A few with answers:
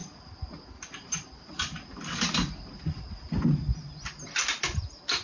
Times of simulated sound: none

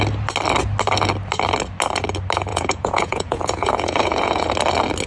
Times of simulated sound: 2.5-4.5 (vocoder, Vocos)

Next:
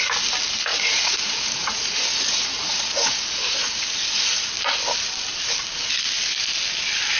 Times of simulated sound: 0.7-4.5 (vocoder, Vocos)

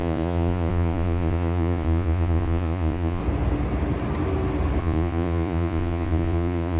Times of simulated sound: 0.0-3.2 (vocoder, Vocos); 4.8-6.8